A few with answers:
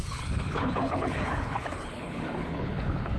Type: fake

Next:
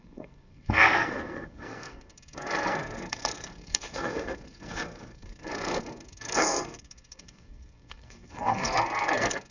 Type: fake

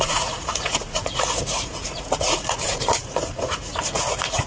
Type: fake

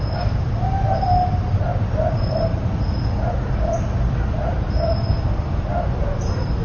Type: real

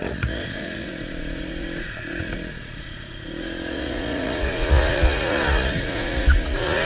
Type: fake